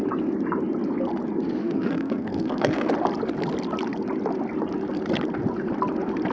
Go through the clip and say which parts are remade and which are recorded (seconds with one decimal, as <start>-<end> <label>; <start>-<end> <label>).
0.0-1.6 recorded; 1.6-2.9 remade; 2.9-6.3 recorded